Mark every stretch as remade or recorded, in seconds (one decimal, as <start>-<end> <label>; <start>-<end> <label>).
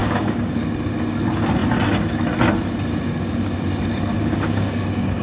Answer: 0.0-0.5 remade; 0.5-4.1 recorded; 4.1-5.2 remade